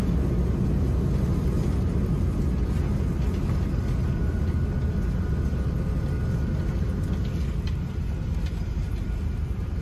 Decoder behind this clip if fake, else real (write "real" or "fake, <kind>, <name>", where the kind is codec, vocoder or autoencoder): real